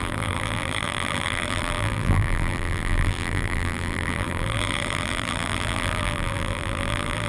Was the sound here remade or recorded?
remade